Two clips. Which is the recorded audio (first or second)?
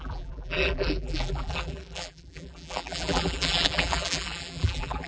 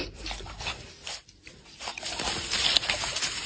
second